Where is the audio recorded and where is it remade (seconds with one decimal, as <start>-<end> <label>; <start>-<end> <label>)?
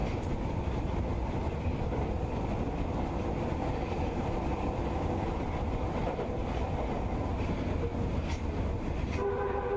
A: 0.0-2.0 remade; 2.0-3.6 recorded; 3.6-4.8 remade; 4.8-6.0 recorded; 6.0-6.7 remade; 6.7-9.8 recorded